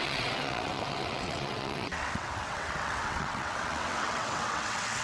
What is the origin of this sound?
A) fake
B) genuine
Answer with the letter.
A